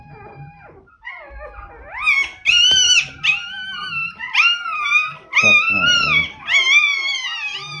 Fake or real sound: real